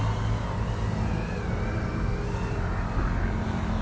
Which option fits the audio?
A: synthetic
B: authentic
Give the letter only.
B